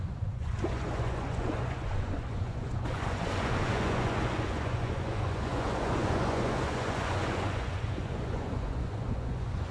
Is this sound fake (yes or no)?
yes